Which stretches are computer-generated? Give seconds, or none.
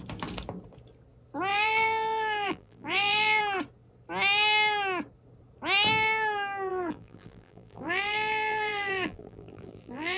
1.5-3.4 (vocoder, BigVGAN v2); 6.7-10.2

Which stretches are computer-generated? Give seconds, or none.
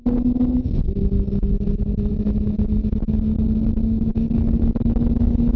none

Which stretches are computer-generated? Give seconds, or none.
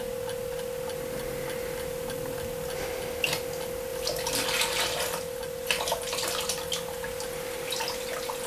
none